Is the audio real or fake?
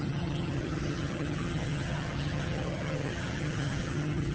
fake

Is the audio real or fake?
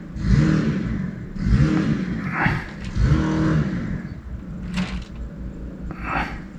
real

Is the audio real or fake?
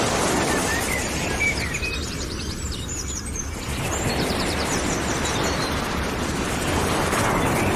fake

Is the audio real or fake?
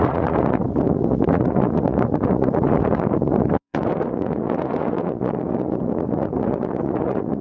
fake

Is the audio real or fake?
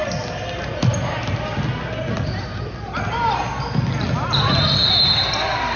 real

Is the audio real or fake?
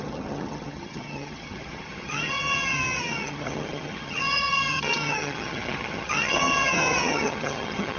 fake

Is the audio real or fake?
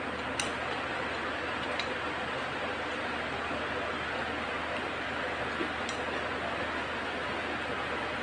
real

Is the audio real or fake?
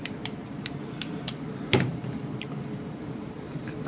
fake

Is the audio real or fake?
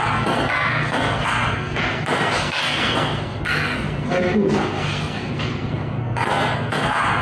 fake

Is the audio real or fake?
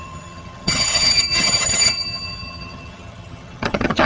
fake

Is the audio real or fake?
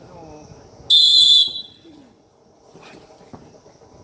real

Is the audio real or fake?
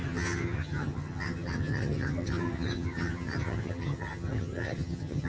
fake